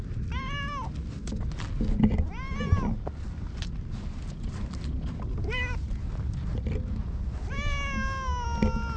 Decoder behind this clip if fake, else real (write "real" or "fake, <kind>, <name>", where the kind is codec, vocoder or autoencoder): real